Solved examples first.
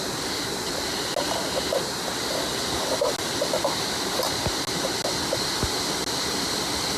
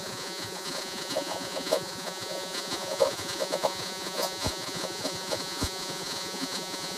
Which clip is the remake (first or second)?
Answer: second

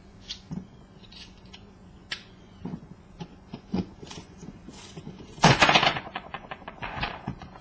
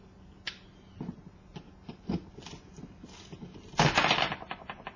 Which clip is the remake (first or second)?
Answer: first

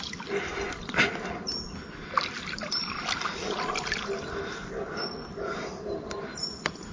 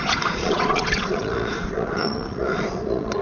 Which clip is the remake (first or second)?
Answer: second